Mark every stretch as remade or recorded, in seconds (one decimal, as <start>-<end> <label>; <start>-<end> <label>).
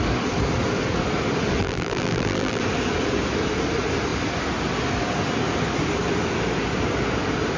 0.0-1.6 recorded; 1.6-2.6 remade; 2.6-7.6 recorded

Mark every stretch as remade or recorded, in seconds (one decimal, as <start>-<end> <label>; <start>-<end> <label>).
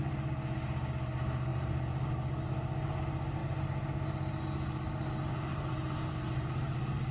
0.0-1.5 recorded; 1.5-2.1 remade; 2.1-5.5 recorded; 5.5-7.1 remade